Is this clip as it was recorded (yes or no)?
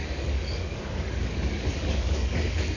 no